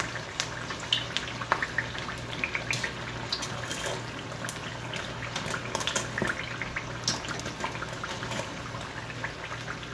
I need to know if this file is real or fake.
real